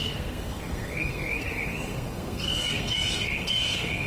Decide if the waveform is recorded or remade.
remade